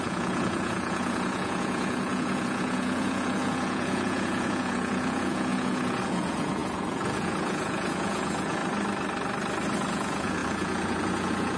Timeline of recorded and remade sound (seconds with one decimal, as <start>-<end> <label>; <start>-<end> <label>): 0.0-8.6 remade; 8.6-9.9 recorded; 9.9-11.6 remade